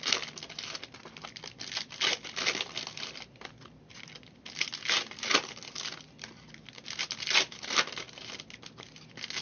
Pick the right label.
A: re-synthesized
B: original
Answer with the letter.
B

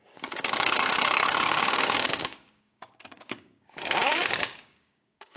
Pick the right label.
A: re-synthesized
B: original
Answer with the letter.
A